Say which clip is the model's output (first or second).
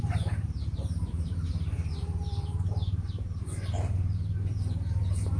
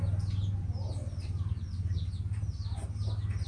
first